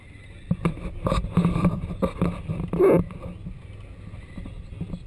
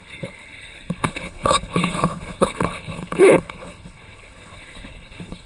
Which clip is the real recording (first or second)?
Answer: first